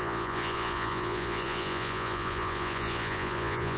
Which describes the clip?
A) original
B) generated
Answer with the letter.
B